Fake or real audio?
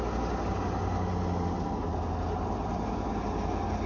real